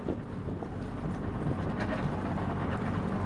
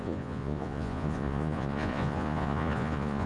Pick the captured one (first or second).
first